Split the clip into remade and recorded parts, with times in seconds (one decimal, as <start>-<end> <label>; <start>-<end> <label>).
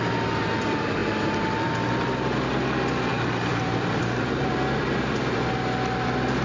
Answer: 0.0-3.1 recorded; 3.1-5.5 remade; 5.5-6.4 recorded